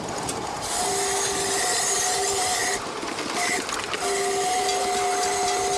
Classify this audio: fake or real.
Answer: real